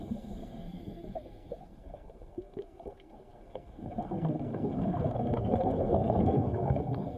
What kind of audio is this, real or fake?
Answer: fake